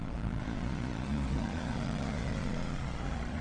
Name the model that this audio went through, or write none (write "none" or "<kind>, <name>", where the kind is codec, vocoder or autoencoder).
vocoder, Vocos